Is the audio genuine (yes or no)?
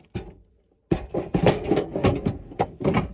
yes